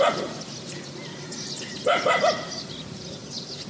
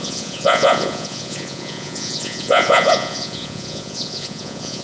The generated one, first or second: second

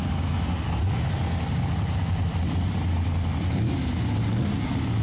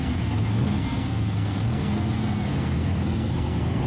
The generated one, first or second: second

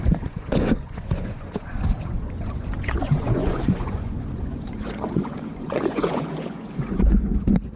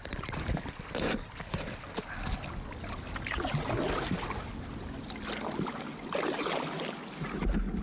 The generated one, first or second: first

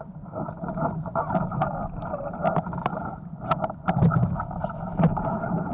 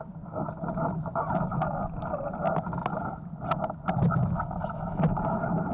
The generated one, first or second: first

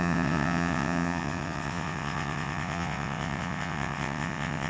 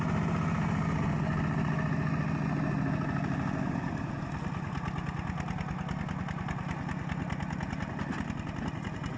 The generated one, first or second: first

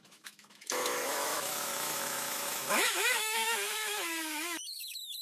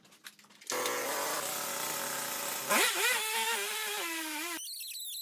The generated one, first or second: first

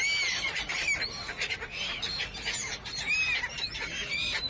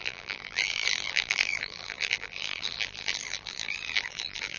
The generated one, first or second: second